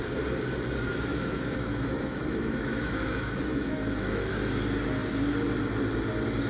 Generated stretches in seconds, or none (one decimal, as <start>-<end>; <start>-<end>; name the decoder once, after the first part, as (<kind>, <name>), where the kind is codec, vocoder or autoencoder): 0.9-4.3 (autoencoder, DAC-VAE)